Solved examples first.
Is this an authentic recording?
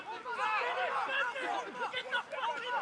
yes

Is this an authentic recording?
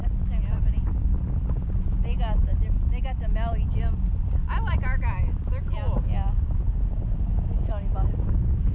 yes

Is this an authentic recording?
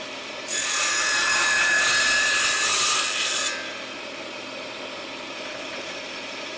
yes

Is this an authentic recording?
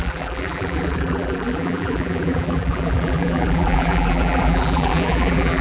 no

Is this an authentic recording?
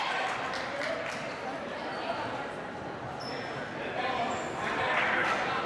yes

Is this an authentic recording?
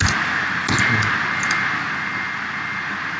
yes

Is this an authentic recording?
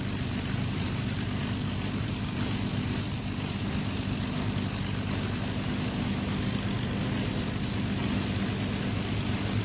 yes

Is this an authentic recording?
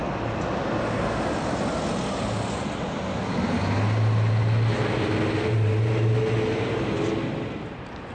yes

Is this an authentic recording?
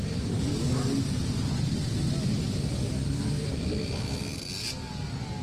yes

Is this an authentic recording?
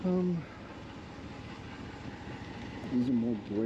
yes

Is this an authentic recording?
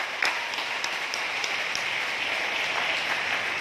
yes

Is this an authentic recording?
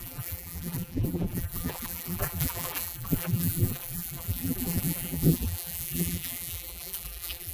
no